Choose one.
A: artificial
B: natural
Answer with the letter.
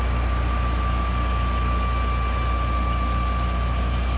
B